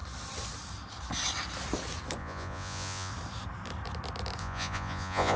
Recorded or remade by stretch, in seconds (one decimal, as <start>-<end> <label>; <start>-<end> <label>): 0.0-2.2 recorded; 2.2-3.1 remade; 3.1-4.4 recorded; 4.4-5.4 remade